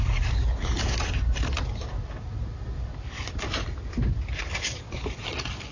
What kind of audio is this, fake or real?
real